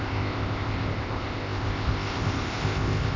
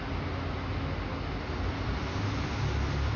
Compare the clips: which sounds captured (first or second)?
second